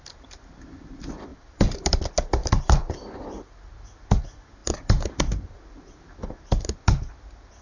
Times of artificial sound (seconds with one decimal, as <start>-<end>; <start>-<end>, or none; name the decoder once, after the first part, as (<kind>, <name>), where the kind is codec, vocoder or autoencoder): 1.3-2.0 (vocoder, BigVGAN v2); 2.4-3.2; 4.6-5.2